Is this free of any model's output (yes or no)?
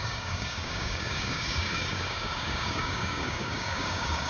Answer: no